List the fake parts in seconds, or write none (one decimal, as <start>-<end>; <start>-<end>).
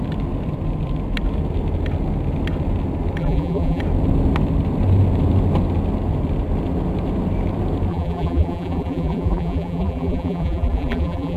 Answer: 3.2-3.8; 7.9-11.4